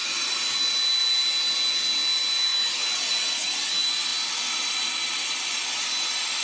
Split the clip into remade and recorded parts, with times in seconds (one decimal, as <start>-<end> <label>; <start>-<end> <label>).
0.0-6.4 recorded